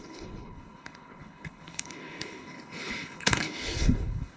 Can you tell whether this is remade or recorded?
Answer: remade